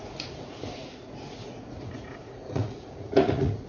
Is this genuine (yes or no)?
no